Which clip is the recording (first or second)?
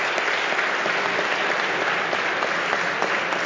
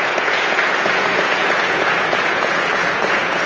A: first